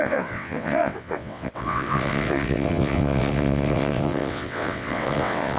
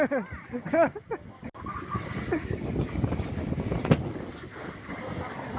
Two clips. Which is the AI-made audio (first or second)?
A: first